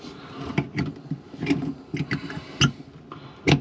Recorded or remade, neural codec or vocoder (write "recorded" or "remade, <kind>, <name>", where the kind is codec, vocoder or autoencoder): recorded